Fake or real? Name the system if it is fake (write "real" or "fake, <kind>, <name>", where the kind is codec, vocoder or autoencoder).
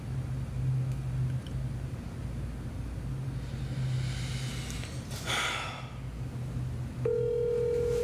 real